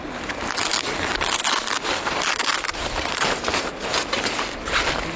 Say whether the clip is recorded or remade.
recorded